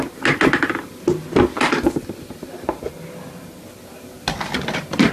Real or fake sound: real